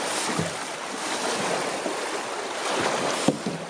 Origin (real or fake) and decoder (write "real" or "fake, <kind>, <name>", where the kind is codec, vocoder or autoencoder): fake, vocoder, BigVGAN v2